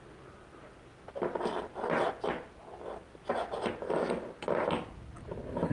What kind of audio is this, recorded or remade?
recorded